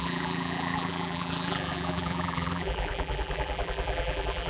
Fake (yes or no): yes